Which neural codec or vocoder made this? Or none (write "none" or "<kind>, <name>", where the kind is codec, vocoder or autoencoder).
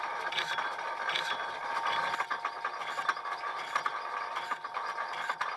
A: none